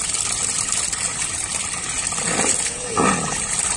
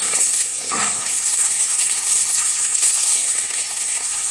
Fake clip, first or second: second